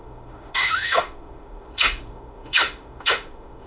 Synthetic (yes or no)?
yes